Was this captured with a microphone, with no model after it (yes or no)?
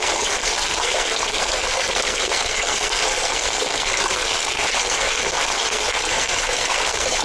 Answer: no